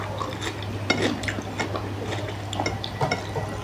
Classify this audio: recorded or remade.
recorded